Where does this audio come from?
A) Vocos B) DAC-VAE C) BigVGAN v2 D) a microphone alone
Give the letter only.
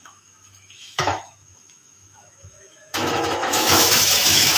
B